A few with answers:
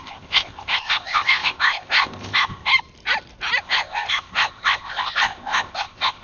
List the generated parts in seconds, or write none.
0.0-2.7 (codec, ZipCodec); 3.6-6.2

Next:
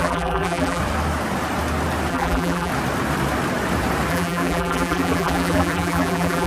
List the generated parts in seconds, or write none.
0.0-0.8 (vocoder, BigVGAN v2); 2.1-2.7; 4.1-6.5

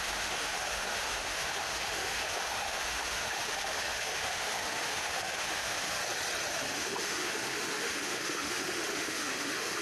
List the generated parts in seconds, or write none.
0.0-6.0 (autoencoder, DAC-VAE); 6.5-9.8

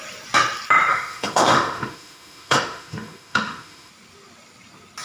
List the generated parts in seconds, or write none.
0.9-3.9 (autoencoder, DAC-VAE)

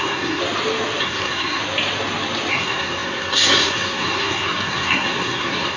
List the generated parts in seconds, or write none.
0.0-0.4 (codec, SNAC); 1.0-1.6; 2.5-5.8

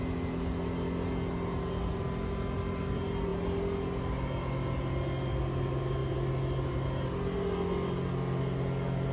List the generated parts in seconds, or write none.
none

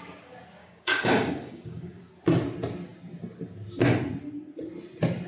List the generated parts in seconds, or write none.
0.6-2.1 (codec, DAC)

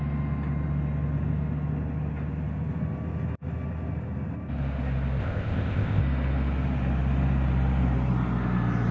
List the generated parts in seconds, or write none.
5.2-6.0 (codec, ZipCodec)